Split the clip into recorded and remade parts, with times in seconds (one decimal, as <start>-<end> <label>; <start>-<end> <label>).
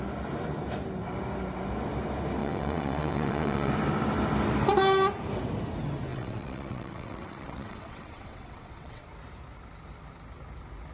0.0-2.4 recorded; 2.4-3.7 remade; 3.7-6.1 recorded; 6.1-9.0 remade; 9.0-10.9 recorded